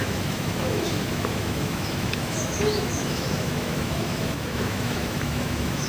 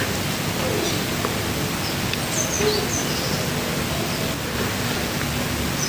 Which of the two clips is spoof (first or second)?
first